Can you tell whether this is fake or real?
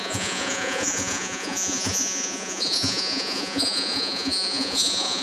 fake